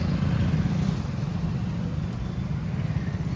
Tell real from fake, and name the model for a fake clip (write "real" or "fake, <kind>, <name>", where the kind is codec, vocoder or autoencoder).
real